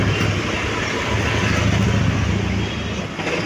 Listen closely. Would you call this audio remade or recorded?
recorded